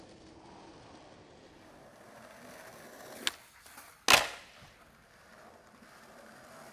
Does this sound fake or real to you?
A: real